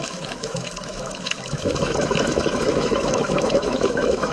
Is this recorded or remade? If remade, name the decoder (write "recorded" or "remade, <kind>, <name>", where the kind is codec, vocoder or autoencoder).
remade, autoencoder, DAC-VAE